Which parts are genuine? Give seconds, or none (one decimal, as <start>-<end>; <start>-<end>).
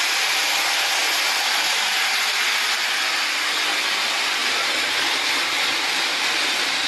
0.0-6.9